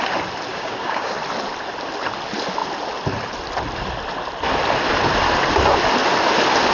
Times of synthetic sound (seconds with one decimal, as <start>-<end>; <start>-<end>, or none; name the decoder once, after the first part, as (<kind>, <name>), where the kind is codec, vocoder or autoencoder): 0.5-1.1 (codec, DAC)